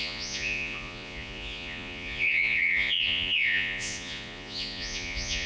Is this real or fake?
fake